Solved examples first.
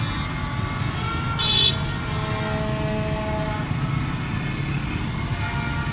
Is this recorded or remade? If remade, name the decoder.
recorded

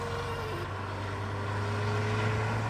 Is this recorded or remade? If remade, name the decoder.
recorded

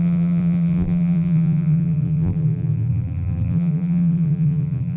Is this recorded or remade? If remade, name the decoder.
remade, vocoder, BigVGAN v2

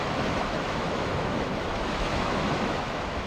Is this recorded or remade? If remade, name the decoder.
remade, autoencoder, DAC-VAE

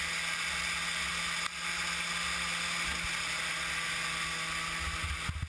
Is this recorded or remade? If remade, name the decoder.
recorded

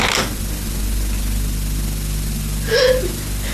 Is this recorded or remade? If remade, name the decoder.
recorded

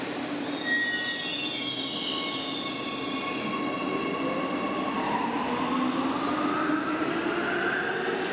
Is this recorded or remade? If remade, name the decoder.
recorded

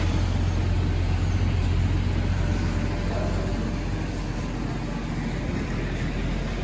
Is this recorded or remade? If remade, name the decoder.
recorded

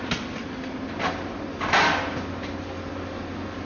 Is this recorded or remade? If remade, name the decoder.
recorded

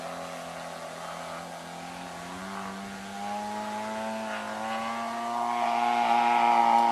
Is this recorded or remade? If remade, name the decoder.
recorded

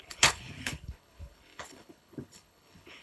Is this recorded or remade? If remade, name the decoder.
remade, codec, HILCodec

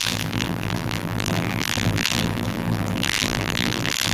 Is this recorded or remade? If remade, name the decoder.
remade, vocoder, BigVGAN v2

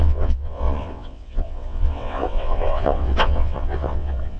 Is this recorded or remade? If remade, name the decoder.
remade, vocoder, WaveNeXt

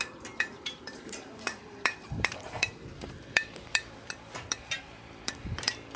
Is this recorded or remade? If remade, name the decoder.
remade, vocoder, BigVGAN v2